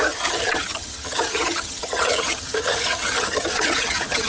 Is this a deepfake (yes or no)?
yes